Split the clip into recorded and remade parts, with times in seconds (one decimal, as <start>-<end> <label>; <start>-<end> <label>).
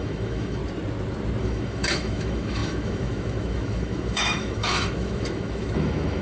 0.0-0.6 remade; 0.6-1.4 recorded; 1.4-6.2 remade